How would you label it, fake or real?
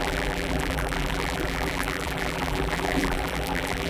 fake